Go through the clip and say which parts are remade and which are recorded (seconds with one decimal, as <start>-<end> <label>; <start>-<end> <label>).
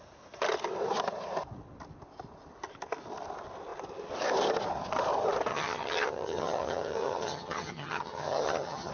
0.0-5.5 recorded; 5.5-8.9 remade